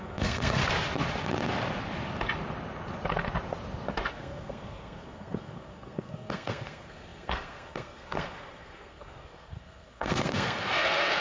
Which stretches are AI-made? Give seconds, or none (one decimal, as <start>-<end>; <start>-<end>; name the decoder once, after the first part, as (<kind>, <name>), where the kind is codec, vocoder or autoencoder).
0.0-0.6 (codec, SNAC); 4.1-11.2